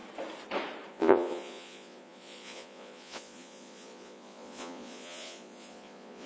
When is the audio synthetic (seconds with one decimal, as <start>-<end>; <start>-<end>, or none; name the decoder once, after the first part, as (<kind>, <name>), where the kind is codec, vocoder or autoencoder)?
0.9-6.3 (vocoder, Vocos)